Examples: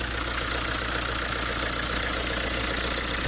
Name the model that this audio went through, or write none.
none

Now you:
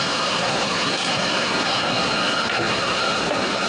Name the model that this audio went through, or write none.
codec, SNAC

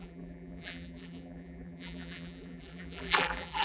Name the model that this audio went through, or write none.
vocoder, BigVGAN v2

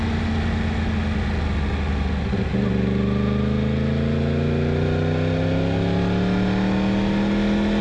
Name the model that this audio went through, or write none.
none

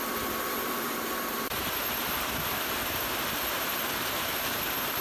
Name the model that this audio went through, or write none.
vocoder, BigVGAN v2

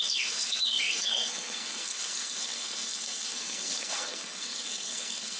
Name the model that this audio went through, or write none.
codec, SNAC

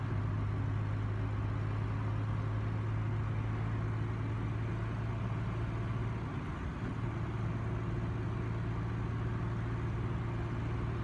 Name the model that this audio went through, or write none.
none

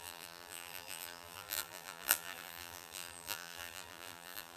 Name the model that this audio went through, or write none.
vocoder, BigVGAN v2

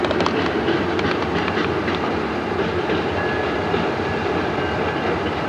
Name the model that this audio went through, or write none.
none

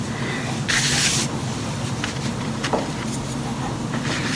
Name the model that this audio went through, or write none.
vocoder, BigVGAN v2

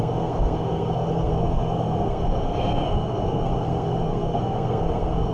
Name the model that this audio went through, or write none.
codec, SNAC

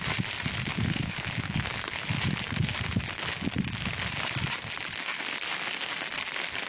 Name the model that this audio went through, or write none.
none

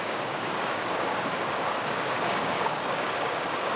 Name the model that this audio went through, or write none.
codec, DAC